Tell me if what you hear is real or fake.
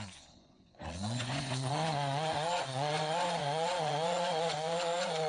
fake